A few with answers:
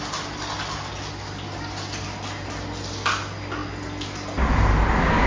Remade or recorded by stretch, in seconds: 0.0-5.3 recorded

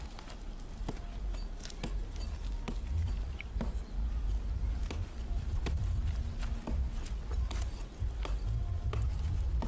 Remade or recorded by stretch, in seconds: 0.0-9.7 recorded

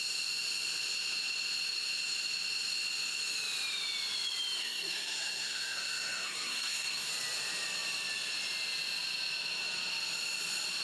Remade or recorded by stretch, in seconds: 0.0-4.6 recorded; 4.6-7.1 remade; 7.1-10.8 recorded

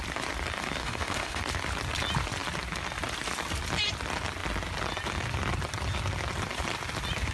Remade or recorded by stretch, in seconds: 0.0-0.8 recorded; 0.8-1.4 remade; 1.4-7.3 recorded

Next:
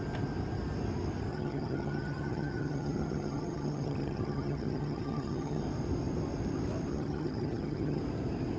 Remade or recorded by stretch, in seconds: 0.0-1.3 recorded; 1.3-5.6 remade; 5.6-6.9 recorded; 6.9-8.0 remade; 8.0-8.6 recorded

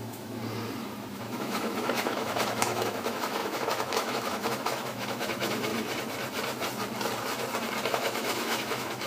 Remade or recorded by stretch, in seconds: 0.0-0.4 remade; 0.4-1.1 recorded; 1.1-5.7 remade; 5.7-7.9 recorded; 7.9-9.1 remade